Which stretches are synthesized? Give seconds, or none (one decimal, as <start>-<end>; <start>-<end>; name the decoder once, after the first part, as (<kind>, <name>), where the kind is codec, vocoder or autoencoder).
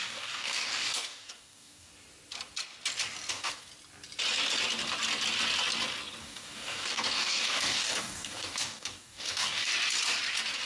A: 0.0-1.9 (codec, DAC); 3.3-3.7; 6.2-9.7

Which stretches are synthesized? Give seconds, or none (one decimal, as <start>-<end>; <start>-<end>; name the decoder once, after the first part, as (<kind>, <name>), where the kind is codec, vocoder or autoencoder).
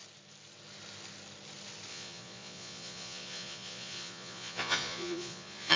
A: 1.9-5.8 (vocoder, Vocos)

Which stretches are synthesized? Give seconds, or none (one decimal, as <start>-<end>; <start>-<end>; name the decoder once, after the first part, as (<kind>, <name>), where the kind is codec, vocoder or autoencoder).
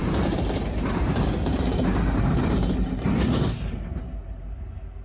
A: 0.0-3.0 (vocoder, BigVGAN v2)